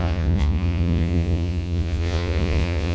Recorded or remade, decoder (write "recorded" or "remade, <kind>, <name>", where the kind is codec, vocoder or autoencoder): remade, vocoder, Vocos